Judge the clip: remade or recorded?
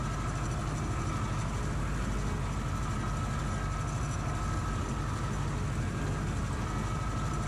recorded